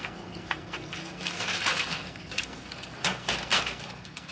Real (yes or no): no